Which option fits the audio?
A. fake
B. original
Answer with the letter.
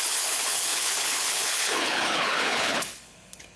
A